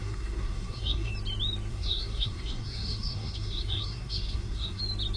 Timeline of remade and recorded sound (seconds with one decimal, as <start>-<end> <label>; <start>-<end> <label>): 0.0-1.1 remade; 1.1-1.7 recorded; 1.7-4.8 remade; 4.8-5.2 recorded